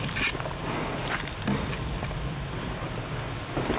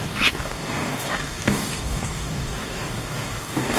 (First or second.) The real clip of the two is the first